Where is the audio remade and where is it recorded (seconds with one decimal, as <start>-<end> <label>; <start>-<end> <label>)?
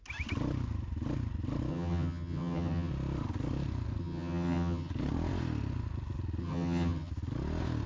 0.0-1.7 recorded; 1.7-2.9 remade; 2.9-4.0 recorded; 4.0-4.9 remade; 4.9-6.4 recorded; 6.4-7.1 remade; 7.1-7.9 recorded